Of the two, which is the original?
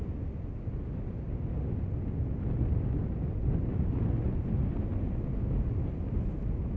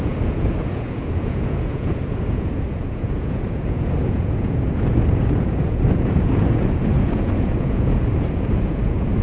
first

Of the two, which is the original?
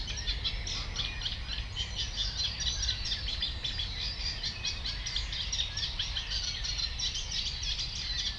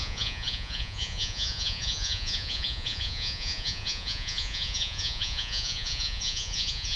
first